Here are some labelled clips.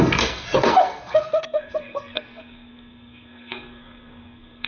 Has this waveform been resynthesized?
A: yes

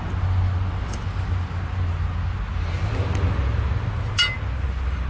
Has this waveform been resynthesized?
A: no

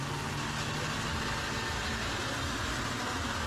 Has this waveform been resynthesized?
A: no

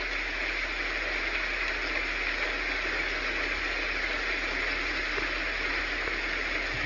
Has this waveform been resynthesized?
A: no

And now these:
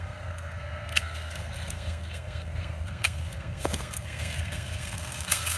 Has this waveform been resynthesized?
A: yes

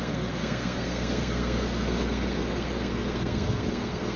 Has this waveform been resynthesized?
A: yes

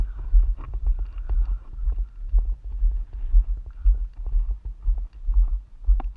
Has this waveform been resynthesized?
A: no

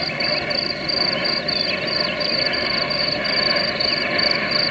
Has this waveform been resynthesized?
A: no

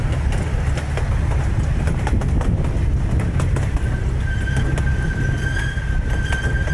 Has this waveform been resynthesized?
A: no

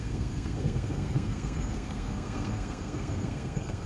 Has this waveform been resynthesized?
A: yes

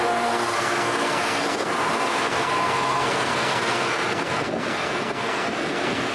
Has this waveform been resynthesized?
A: yes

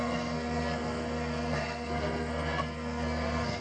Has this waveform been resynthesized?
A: yes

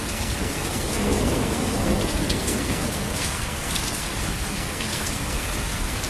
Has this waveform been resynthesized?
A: yes